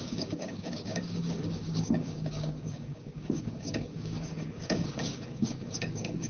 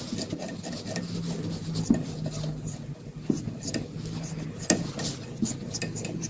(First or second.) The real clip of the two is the second